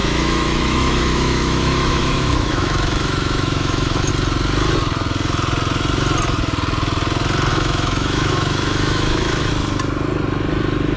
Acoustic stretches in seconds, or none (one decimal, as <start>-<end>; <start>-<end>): 4.1-7.5; 9.5-11.0